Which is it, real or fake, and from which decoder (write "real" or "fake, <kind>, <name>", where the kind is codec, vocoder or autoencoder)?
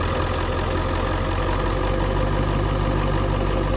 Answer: real